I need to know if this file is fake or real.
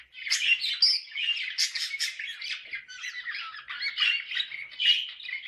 real